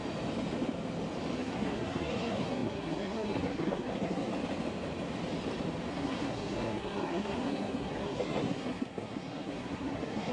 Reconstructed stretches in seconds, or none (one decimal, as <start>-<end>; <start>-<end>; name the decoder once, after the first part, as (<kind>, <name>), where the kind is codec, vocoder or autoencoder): 1.4-4.3 (codec, SNAC); 5.9-10.3